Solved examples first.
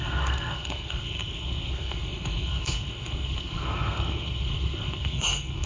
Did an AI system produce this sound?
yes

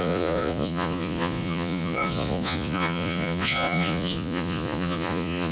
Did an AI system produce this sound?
yes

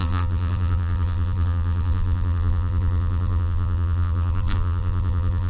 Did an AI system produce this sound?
yes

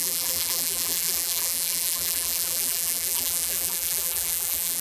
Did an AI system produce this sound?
yes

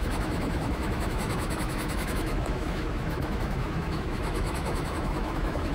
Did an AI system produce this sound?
yes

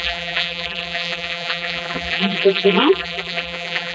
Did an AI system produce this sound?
yes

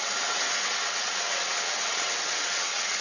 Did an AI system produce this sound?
yes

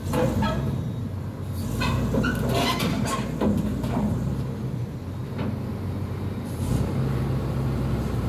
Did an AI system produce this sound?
no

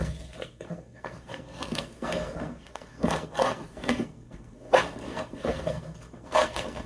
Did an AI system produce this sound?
yes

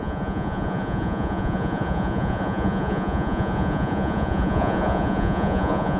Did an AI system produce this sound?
yes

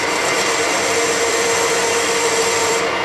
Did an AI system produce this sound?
yes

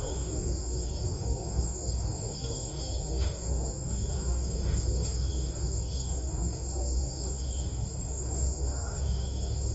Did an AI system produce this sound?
yes